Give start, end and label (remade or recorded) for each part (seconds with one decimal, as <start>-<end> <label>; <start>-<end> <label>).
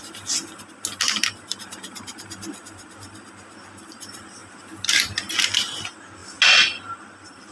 0.0-7.5 recorded